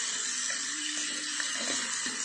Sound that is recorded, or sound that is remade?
recorded